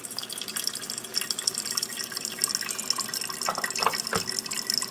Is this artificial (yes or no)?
no